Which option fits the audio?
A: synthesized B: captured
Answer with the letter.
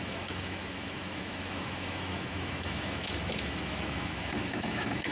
A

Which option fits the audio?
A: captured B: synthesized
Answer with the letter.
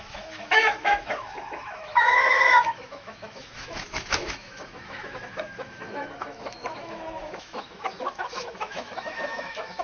B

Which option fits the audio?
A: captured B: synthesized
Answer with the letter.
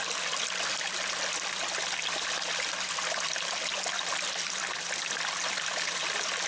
A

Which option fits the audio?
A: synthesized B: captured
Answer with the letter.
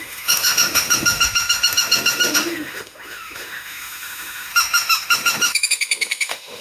A